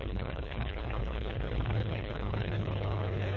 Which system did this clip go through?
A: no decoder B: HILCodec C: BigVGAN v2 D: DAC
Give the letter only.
B